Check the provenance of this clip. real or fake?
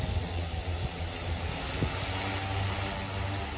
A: real